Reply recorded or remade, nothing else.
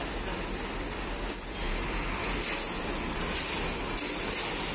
recorded